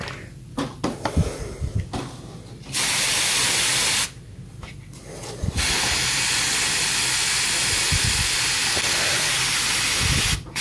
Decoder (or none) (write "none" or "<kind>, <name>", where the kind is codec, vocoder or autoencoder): none